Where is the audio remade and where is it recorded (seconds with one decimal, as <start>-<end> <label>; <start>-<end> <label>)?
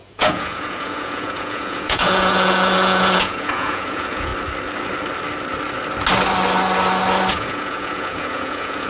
0.0-4.3 remade; 4.3-7.3 recorded; 7.3-8.9 remade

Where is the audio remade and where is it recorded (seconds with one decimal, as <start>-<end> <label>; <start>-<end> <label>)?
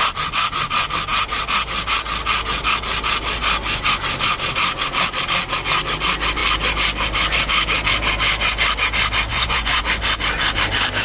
0.0-9.3 recorded; 9.3-9.8 remade; 9.8-11.0 recorded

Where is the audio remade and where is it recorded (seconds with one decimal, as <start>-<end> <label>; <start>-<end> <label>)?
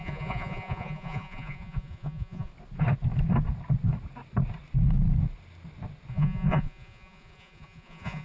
0.0-2.5 remade; 2.5-6.1 recorded; 6.1-8.2 remade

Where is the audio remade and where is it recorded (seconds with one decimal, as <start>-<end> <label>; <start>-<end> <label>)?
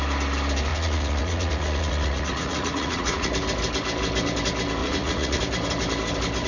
0.0-0.7 recorded; 0.7-3.3 remade; 3.3-4.8 recorded; 4.8-5.4 remade; 5.4-6.5 recorded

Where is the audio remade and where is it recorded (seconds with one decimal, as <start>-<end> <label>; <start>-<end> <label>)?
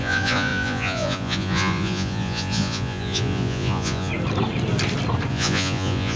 0.0-4.1 remade; 4.1-5.3 recorded; 5.3-6.2 remade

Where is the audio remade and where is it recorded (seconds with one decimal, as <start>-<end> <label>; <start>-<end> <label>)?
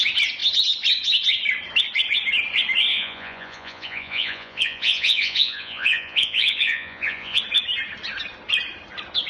0.0-2.9 recorded; 2.9-7.4 remade; 7.4-9.3 recorded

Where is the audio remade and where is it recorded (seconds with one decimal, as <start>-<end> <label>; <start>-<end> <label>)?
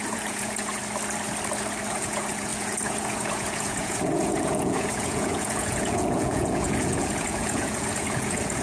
0.0-0.8 remade; 0.8-1.9 recorded; 1.9-8.6 remade